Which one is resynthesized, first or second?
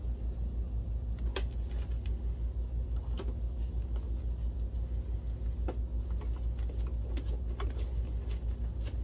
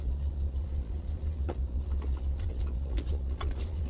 second